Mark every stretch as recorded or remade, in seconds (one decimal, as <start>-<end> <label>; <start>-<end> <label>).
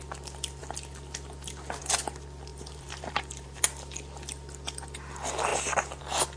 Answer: 0.0-2.5 recorded; 2.5-3.6 remade; 3.6-6.4 recorded